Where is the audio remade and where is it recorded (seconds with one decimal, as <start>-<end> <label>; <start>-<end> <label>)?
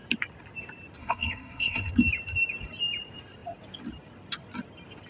0.0-1.0 recorded; 1.0-1.9 remade; 1.9-5.1 recorded